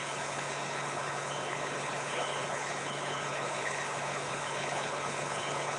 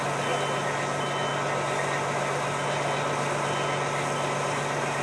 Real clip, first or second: second